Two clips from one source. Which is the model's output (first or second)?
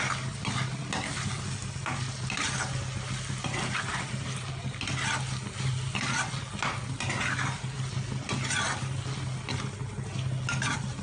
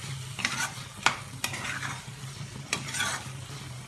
second